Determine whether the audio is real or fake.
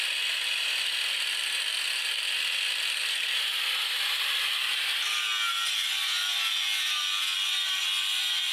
real